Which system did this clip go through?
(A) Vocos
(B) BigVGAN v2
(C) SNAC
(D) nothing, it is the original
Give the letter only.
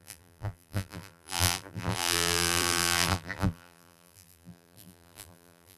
B